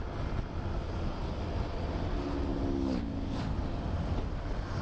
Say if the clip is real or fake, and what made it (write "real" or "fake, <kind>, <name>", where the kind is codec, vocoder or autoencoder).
real